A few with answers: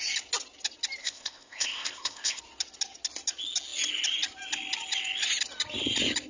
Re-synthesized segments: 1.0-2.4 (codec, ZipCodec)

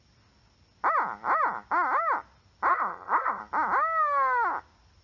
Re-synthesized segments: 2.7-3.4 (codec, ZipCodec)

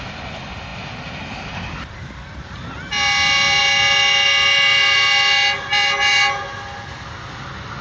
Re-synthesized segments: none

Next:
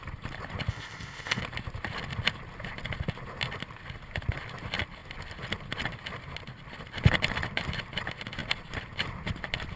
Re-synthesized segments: 0.7-1.4 (codec, ZipCodec)